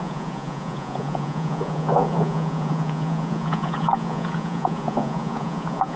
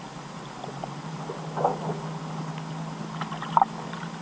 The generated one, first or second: first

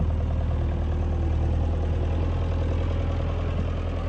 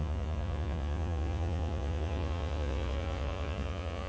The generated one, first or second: second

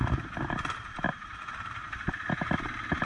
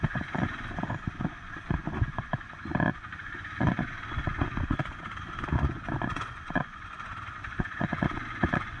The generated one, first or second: second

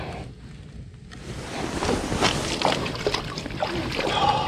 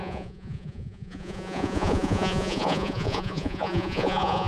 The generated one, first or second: second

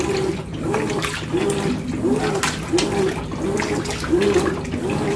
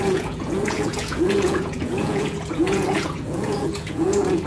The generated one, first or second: second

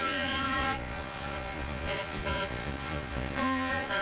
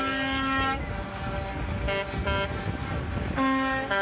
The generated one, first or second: first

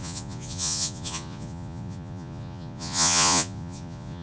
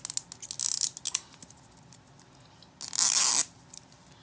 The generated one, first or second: first